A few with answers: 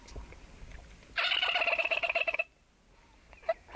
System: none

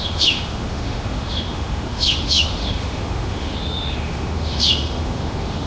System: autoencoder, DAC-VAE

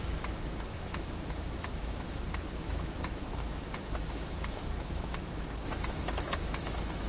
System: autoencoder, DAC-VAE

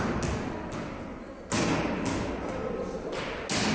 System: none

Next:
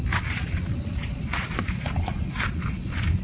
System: vocoder, Vocos